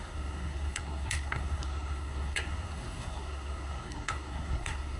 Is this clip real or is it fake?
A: fake